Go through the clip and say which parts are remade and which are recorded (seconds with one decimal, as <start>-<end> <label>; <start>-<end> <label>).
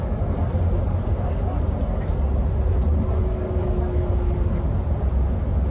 0.0-3.3 recorded; 3.3-4.7 remade; 4.7-5.7 recorded